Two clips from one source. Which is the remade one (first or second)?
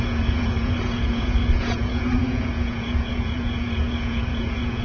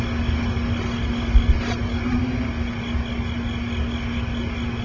first